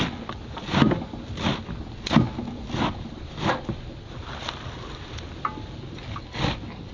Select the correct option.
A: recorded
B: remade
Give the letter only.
A